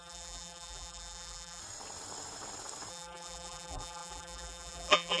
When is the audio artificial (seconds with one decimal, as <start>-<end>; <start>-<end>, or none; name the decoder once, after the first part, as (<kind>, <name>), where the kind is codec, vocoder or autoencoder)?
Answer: 0.0-1.6 (vocoder, BigVGAN v2); 2.9-5.2